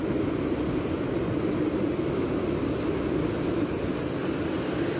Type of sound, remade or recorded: recorded